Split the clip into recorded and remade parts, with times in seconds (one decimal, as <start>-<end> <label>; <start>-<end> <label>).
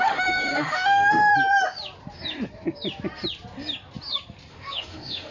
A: 0.0-1.3 remade; 1.3-4.5 recorded; 4.5-5.3 remade